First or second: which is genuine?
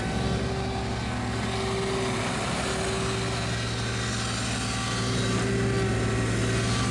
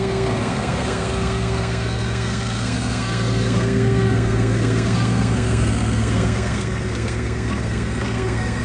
first